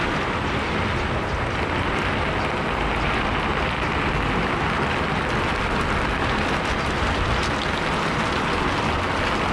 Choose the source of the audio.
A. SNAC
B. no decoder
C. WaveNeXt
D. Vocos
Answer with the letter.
B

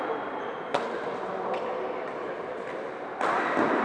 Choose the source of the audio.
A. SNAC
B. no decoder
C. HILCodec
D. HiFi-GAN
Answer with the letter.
B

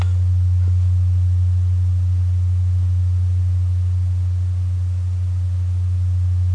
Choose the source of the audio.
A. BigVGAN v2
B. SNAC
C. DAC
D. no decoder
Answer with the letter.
D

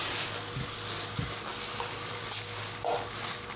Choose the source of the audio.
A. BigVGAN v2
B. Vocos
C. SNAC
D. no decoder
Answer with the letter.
D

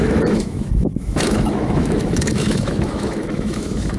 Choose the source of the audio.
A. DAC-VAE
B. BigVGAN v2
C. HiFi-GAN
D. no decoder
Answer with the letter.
A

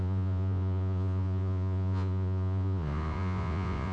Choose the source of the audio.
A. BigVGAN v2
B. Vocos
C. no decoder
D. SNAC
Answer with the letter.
B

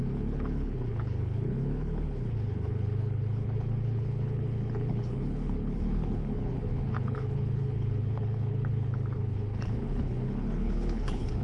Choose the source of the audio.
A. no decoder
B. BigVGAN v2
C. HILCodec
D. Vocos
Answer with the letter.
C